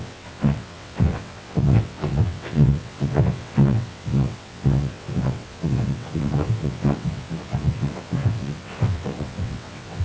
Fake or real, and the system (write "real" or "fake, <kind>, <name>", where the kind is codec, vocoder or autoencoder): fake, vocoder, WaveNeXt